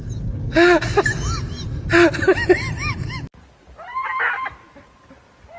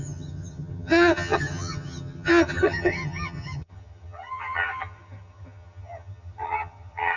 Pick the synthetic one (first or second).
second